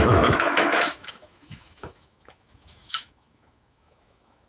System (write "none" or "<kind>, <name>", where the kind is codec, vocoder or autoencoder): autoencoder, DAC-VAE